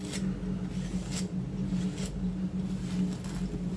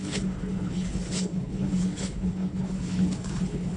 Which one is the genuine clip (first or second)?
first